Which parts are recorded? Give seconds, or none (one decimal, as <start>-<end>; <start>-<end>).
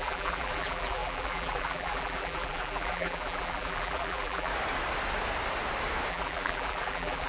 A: 4.5-6.1